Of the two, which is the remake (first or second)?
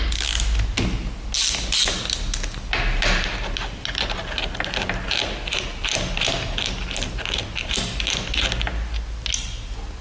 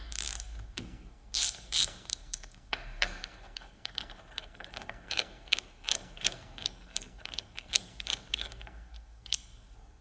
second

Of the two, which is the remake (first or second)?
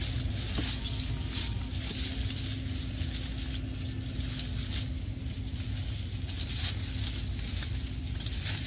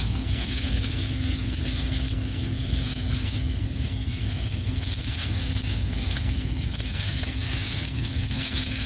second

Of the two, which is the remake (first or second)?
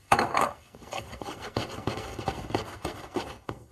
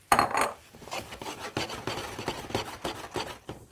first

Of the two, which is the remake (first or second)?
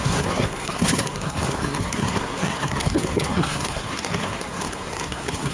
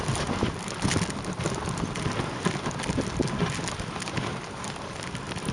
first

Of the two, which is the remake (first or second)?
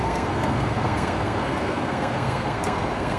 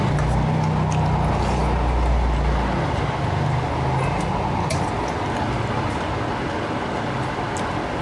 first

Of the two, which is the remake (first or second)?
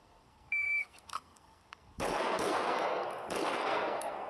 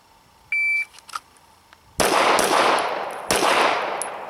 first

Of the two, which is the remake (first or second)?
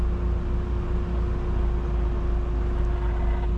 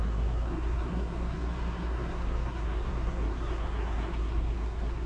second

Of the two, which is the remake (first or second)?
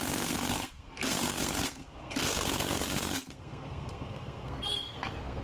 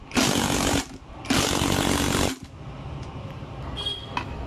first